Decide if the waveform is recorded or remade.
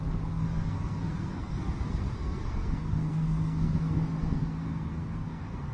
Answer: remade